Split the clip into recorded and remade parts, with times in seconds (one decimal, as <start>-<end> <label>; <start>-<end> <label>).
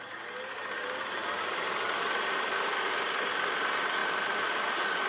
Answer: 0.0-4.0 recorded; 4.0-5.1 remade